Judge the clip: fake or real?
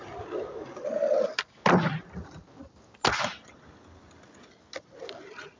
real